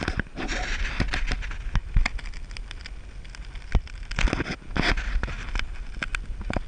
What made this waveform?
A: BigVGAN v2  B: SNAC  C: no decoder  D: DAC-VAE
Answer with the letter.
C